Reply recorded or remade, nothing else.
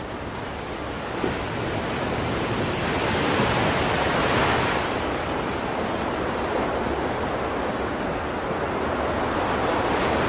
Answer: recorded